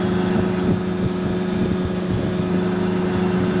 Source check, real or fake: real